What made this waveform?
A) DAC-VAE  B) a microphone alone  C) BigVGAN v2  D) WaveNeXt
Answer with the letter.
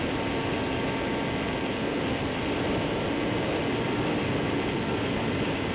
B